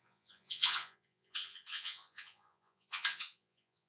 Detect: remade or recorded remade